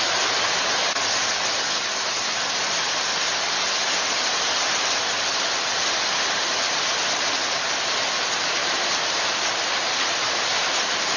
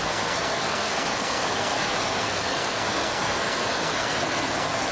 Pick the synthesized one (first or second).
second